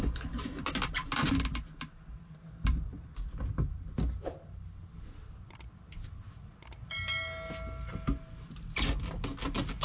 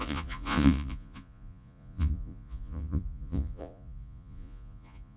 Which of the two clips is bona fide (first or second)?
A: first